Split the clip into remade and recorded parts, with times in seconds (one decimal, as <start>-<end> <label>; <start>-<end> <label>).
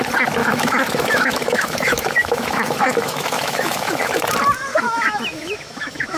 0.0-0.4 recorded; 0.4-4.1 remade; 4.1-4.7 recorded; 4.7-6.2 remade